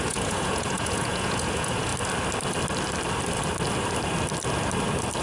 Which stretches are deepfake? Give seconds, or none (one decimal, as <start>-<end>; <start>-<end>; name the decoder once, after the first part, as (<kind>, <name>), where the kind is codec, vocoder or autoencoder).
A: 0.0-1.9 (vocoder, Vocos)